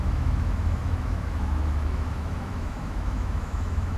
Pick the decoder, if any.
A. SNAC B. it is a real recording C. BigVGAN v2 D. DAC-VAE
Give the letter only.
D